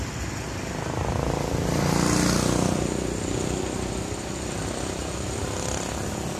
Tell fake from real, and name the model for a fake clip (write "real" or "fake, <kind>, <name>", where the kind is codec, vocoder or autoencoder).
real